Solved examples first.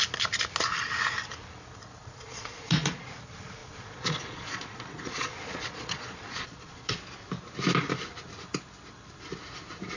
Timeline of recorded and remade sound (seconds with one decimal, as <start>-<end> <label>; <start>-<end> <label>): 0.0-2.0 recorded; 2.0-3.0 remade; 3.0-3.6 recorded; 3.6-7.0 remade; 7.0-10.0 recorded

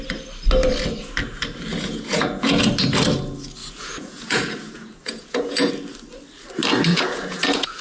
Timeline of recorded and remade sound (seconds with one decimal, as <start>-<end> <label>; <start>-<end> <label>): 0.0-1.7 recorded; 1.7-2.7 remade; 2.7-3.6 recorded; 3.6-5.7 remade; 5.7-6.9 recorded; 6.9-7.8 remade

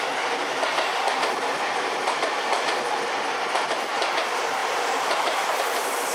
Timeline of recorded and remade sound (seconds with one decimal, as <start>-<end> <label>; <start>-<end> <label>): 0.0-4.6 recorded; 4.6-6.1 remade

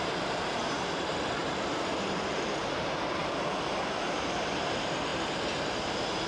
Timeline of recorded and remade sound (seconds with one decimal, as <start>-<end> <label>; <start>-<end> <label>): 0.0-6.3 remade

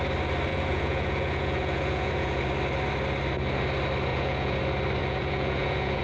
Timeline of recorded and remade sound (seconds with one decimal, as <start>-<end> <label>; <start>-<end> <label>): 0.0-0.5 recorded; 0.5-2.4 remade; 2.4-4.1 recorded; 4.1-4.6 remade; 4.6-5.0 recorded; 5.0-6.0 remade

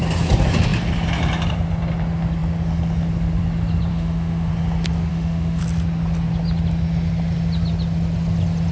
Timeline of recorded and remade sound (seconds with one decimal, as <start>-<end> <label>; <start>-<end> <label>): 0.0-3.9 recorded; 3.9-4.5 remade; 4.5-5.1 recorded; 5.1-5.6 remade; 5.6-8.7 recorded

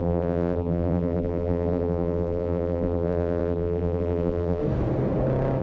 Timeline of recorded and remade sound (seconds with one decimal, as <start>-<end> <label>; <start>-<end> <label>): 0.0-4.6 remade; 4.6-5.6 recorded